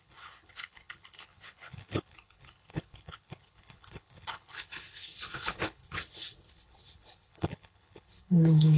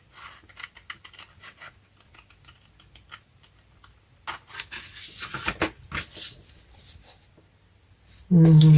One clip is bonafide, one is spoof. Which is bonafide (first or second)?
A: second